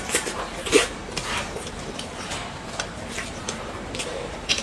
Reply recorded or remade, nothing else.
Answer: remade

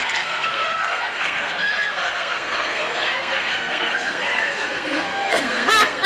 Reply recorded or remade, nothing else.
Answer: remade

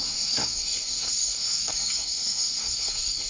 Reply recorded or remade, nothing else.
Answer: remade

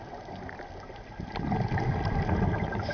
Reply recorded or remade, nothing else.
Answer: recorded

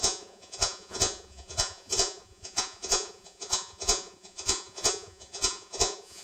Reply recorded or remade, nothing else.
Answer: remade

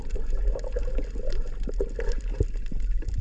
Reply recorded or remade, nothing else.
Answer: recorded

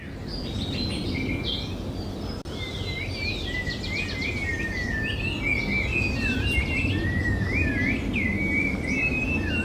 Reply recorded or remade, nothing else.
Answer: recorded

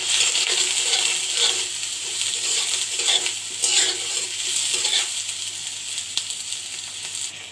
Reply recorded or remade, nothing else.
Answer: recorded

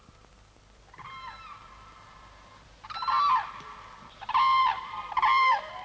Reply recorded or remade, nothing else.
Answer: remade